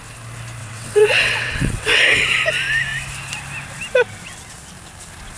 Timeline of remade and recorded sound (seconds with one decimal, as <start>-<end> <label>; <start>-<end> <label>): 0.0-0.6 recorded; 0.6-2.0 remade; 2.0-5.4 recorded